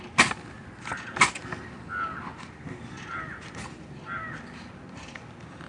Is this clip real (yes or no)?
no